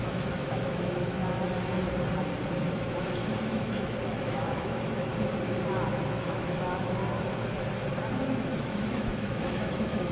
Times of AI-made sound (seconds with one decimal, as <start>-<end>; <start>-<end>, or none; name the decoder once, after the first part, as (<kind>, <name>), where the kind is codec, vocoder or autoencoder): 0.0-1.2 (autoencoder, DAC-VAE); 2.6-5.1; 6.1-7.0; 8.2-10.1